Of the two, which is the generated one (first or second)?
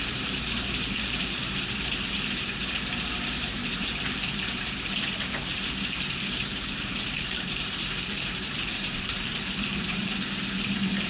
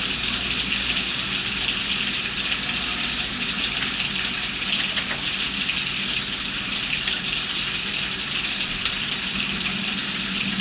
first